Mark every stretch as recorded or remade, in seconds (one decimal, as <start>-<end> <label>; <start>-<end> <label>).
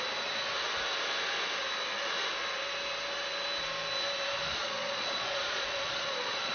0.0-4.5 recorded; 4.5-6.5 remade